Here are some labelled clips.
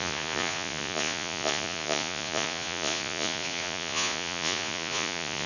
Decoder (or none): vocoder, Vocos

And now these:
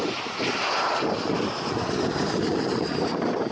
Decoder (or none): none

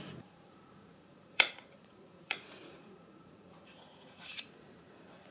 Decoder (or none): vocoder, Vocos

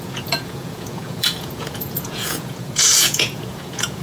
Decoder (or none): vocoder, Vocos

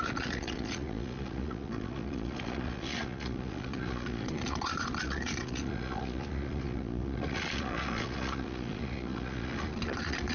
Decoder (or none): vocoder, Vocos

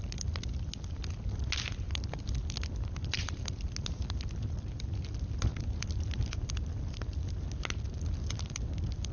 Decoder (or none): none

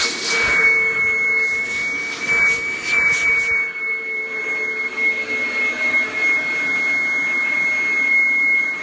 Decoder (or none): none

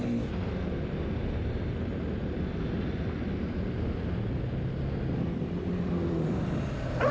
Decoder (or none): none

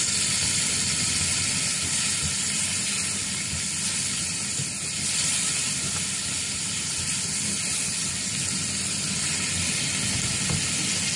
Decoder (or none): none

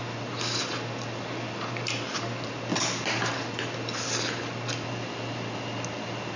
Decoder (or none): none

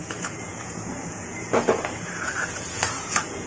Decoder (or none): vocoder, Vocos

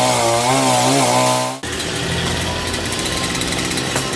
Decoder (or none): none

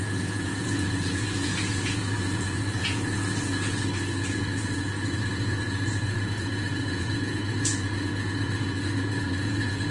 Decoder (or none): vocoder, Vocos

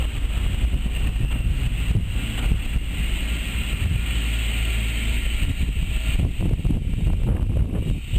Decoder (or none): none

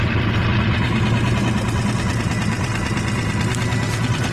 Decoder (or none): none